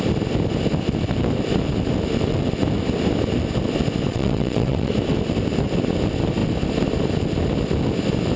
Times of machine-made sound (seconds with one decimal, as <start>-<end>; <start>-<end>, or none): 4.1-4.9